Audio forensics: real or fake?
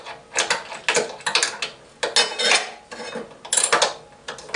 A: real